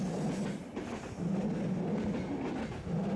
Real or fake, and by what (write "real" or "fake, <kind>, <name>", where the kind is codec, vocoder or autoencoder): real